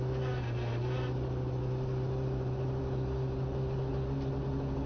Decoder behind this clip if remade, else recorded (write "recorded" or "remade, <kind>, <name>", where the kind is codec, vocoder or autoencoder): recorded